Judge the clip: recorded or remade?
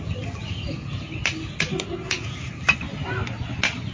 recorded